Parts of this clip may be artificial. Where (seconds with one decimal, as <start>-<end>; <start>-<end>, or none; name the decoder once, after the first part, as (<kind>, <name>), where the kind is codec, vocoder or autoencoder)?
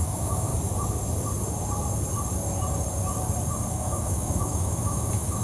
0.0-0.5 (autoencoder, DAC-VAE); 3.7-5.4